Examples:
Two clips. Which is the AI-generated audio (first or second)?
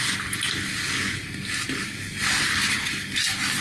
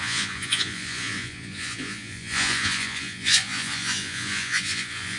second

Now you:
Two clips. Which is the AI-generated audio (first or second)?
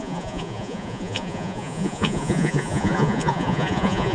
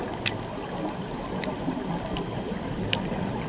first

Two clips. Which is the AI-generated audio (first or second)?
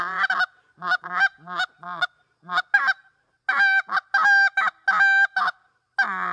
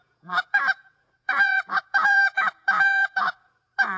second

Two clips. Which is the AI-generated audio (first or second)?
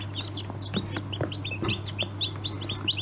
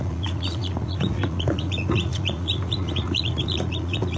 second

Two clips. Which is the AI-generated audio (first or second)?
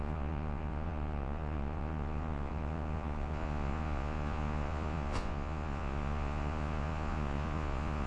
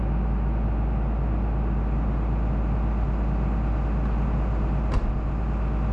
first